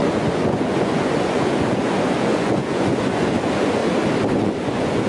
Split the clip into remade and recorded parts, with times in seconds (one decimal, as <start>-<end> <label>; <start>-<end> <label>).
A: 0.0-3.8 remade; 3.8-4.3 recorded; 4.3-5.1 remade